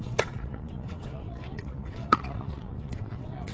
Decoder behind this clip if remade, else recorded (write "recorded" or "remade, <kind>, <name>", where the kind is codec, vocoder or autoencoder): remade, vocoder, WaveNeXt